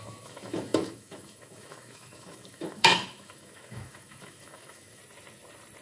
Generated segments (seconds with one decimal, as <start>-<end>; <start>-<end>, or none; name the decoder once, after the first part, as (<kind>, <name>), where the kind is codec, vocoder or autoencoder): 0.0-5.0 (autoencoder, DAC-VAE)